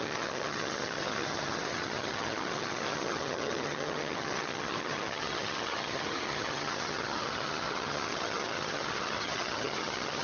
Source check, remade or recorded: remade